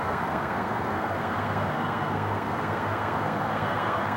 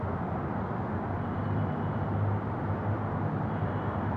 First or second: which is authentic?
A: second